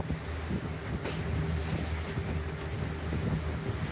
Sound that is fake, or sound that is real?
real